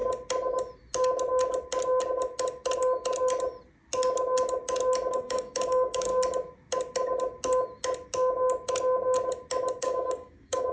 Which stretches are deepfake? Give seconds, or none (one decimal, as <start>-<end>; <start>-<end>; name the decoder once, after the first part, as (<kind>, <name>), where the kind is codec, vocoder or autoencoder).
5.1-6.1 (codec, DAC); 9.8-10.7